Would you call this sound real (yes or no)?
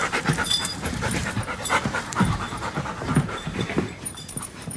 no